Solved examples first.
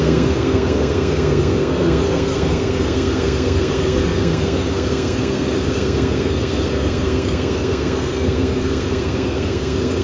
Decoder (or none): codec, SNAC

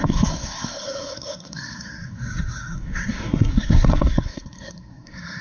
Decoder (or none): codec, SNAC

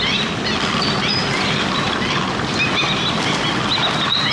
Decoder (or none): none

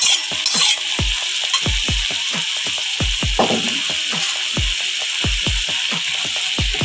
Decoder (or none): none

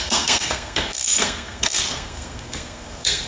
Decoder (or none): codec, SNAC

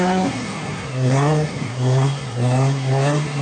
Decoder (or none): codec, SNAC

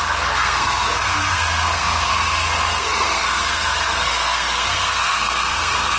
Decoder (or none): codec, SNAC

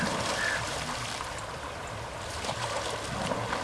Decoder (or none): none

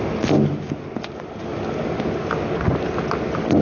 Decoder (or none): none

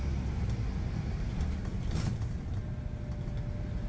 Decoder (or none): none